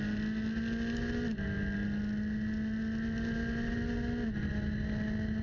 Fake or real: real